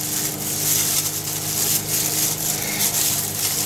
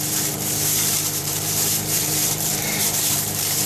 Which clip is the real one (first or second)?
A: first